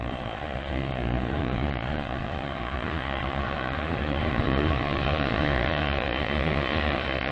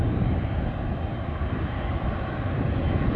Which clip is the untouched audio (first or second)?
second